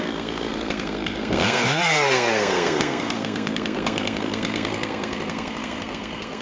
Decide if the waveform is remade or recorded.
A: remade